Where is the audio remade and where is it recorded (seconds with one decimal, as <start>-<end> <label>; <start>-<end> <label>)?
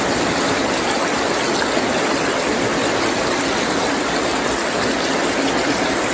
0.0-6.1 recorded